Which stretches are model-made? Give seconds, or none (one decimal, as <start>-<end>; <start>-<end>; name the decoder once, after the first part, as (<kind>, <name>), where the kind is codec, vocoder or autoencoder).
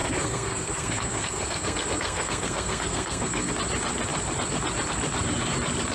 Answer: 0.0-3.5 (codec, SNAC)